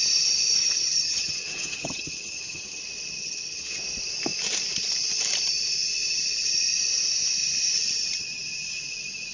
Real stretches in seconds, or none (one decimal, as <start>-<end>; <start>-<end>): 0.0-0.6; 2.8-3.2; 3.8-9.3